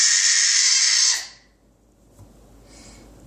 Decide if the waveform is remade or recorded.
recorded